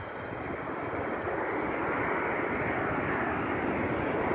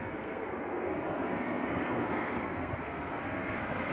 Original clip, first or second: first